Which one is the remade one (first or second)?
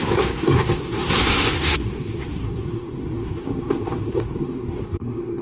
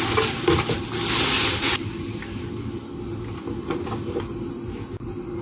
first